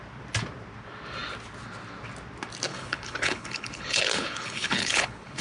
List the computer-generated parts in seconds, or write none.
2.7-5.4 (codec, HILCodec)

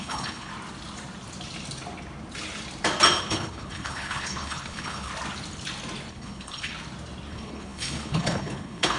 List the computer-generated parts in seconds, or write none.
0.0-0.5 (codec, HILCodec); 3.2-5.1; 6.1-6.7; 7.3-9.0

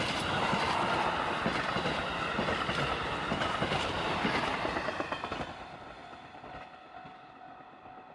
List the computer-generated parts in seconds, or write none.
none

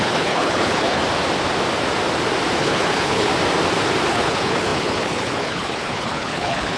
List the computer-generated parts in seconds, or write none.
0.0-1.0 (codec, HILCodec); 2.6-3.3; 4.1-6.8

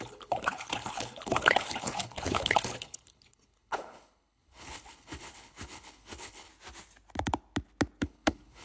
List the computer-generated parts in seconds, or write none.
0.0-6.5 (codec, HILCodec); 8.0-8.6

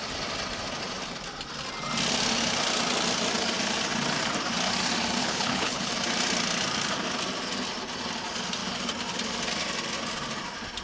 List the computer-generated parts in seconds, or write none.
5.2-5.9 (codec, HILCodec)

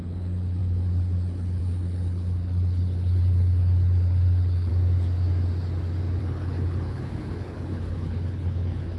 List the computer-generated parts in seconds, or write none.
0.0-4.7 (codec, HILCodec); 6.2-9.0